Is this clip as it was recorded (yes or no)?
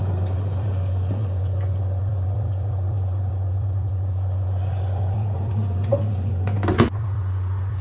no